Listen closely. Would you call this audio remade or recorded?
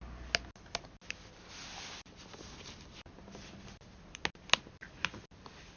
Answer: recorded